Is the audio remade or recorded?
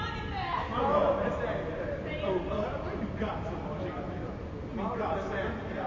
recorded